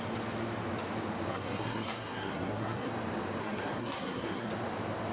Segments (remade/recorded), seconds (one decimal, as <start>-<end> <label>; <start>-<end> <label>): 0.0-1.3 recorded; 1.3-2.9 remade; 2.9-3.4 recorded; 3.4-4.5 remade; 4.5-5.1 recorded